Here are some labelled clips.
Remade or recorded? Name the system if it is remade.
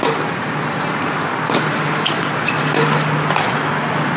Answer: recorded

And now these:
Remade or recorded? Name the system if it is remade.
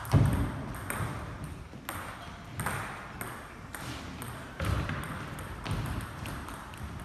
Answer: recorded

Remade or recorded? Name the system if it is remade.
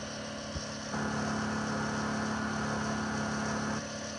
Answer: recorded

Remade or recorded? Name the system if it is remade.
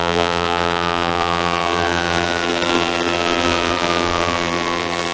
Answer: remade, vocoder, BigVGAN v2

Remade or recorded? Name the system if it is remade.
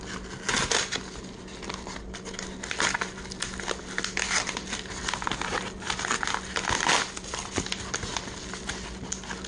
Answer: recorded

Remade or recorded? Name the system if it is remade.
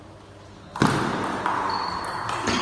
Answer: recorded